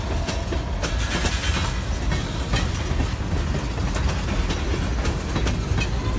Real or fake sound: real